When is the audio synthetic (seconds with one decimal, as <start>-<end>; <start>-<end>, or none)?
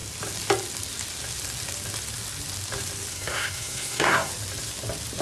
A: 3.1-4.3